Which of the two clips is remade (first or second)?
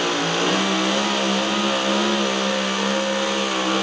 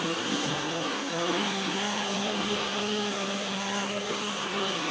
second